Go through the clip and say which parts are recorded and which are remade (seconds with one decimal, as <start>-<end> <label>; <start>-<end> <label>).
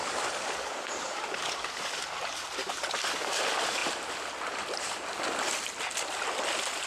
0.0-2.0 remade; 2.0-2.6 recorded; 2.6-3.4 remade; 3.4-6.9 recorded